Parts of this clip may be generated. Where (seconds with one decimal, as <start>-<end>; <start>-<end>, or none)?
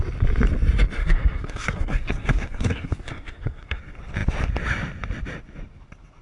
1.0-3.8